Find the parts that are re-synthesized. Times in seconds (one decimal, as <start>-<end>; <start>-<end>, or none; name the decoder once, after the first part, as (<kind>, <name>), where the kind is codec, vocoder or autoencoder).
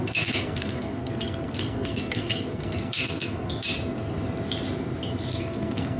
0.0-3.6 (codec, SNAC); 5.3-6.0